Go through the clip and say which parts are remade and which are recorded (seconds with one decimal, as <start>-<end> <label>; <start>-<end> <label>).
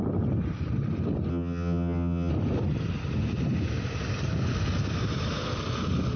0.0-1.3 recorded; 1.3-2.3 remade; 2.3-6.2 recorded